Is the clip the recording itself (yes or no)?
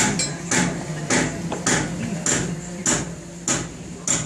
yes